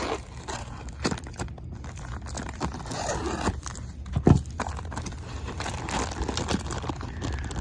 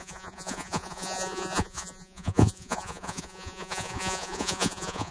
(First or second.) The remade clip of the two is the second